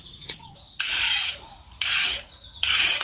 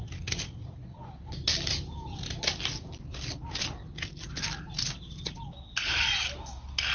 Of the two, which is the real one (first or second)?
second